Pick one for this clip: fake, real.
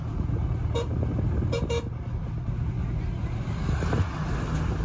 real